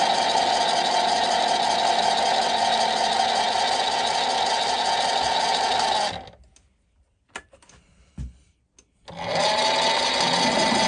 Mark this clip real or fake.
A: real